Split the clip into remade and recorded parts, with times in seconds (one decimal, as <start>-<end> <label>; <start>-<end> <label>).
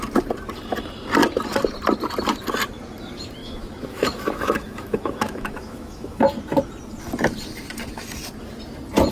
0.0-3.4 recorded; 3.4-6.2 remade; 6.2-9.1 recorded